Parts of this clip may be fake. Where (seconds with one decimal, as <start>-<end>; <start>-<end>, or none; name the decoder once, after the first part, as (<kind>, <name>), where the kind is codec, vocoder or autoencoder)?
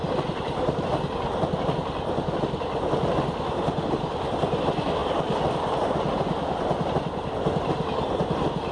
none